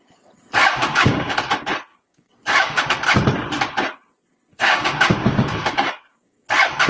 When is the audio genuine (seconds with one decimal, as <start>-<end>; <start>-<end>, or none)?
0.0-0.8; 1.4-1.9; 2.8-4.5; 6.5-6.9